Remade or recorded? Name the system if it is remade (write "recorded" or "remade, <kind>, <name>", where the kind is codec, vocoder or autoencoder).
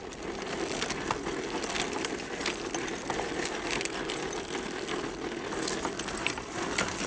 recorded